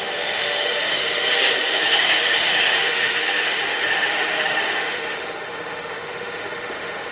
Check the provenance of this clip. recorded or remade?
remade